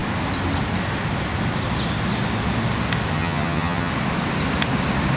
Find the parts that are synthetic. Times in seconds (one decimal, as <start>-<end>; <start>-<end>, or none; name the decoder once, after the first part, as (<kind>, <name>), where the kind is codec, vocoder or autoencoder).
3.1-3.9 (vocoder, HiFi-GAN)